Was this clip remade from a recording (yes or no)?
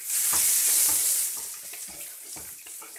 no